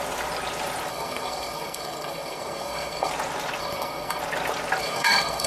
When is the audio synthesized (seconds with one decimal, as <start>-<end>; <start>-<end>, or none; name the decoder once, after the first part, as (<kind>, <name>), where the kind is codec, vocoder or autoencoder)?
0.9-3.1 (codec, SNAC); 3.6-4.2; 4.8-5.5